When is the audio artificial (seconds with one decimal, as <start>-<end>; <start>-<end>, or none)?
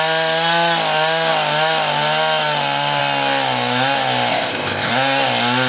4.3-4.9